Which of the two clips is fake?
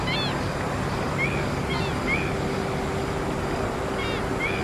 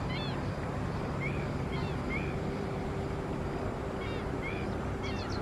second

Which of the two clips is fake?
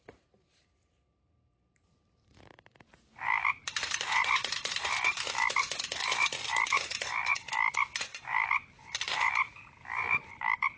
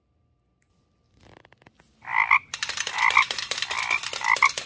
first